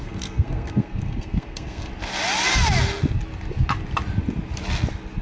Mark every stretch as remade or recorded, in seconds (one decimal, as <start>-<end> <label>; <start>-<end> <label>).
0.0-1.9 remade; 1.9-5.2 recorded